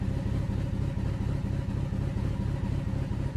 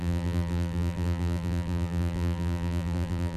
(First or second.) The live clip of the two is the first